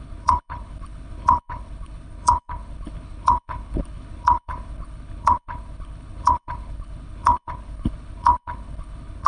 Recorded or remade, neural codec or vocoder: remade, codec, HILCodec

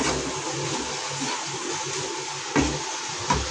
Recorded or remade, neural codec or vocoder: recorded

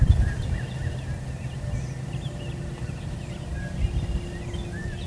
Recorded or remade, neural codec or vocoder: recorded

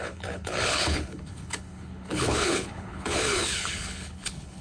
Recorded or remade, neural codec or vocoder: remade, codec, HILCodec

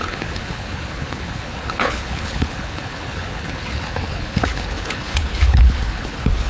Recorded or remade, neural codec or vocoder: remade, codec, HILCodec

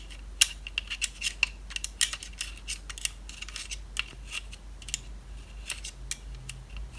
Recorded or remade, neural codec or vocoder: recorded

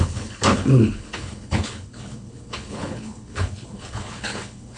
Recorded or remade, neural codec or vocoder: remade, codec, HILCodec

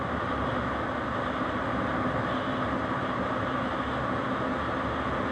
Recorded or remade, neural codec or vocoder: recorded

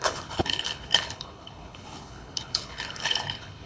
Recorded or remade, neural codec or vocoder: remade, codec, HILCodec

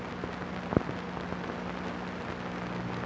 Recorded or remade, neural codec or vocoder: recorded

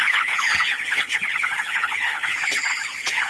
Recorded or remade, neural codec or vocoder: remade, codec, HILCodec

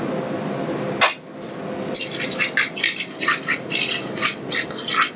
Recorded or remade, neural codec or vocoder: recorded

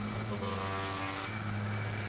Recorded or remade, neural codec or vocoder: recorded